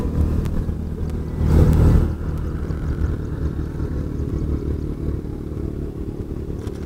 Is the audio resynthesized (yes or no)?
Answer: no